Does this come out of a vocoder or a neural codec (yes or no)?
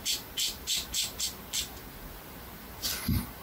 no